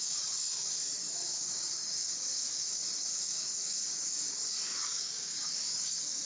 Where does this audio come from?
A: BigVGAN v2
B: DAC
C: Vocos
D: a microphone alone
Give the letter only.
B